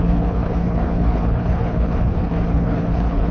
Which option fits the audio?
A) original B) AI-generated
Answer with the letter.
B